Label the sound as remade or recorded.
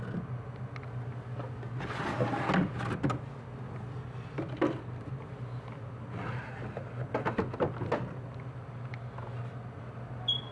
recorded